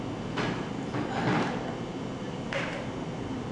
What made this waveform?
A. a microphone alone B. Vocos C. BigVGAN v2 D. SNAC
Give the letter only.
A